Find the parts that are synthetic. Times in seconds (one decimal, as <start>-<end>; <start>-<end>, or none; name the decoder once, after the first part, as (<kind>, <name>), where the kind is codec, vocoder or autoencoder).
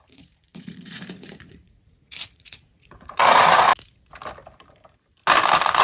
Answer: 0.0-3.7 (vocoder, Vocos)